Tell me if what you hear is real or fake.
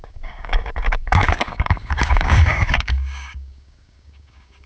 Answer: fake